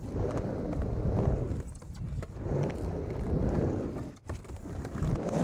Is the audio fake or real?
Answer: real